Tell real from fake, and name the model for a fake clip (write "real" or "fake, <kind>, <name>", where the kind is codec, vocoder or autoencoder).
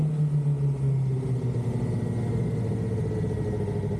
real